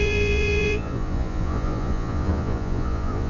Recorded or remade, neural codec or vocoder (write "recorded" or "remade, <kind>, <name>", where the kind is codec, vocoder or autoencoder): remade, vocoder, Vocos